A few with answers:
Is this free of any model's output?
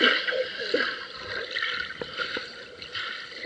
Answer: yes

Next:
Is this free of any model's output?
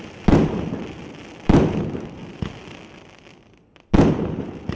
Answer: no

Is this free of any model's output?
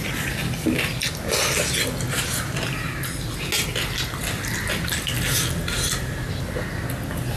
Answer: yes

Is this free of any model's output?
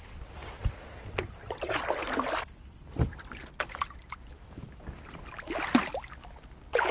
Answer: yes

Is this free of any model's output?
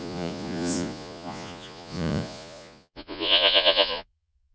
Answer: no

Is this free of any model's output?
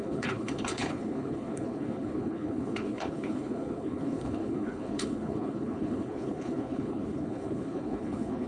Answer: no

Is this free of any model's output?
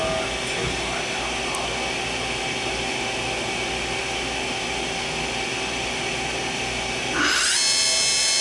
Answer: yes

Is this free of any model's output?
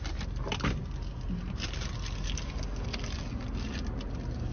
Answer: yes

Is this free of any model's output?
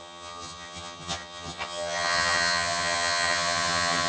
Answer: no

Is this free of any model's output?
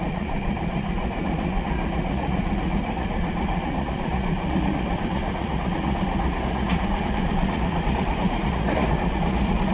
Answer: no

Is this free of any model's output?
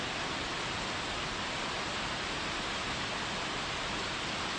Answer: yes